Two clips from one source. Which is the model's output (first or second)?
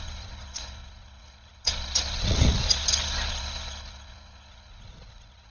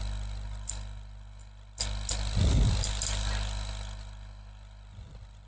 first